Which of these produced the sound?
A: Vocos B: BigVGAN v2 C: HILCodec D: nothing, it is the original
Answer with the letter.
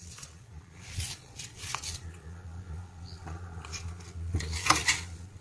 A